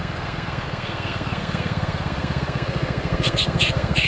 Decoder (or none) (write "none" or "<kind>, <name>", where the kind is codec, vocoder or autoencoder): codec, SNAC